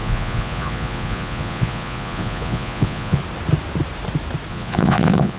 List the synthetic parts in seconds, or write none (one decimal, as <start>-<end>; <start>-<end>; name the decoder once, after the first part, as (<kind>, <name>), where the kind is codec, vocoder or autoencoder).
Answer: 0.0-3.2 (vocoder, Vocos); 4.5-5.4